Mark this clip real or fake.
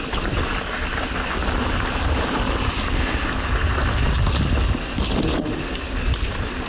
real